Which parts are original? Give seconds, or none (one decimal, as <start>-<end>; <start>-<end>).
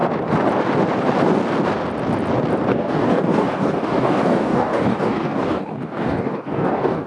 0.0-2.7